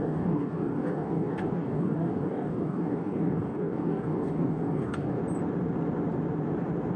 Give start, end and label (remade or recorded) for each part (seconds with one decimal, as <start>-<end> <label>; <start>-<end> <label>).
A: 0.0-5.2 remade; 5.2-7.0 recorded